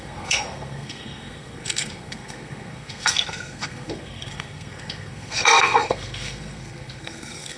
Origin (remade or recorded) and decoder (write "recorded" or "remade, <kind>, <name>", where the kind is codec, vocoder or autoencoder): remade, codec, SNAC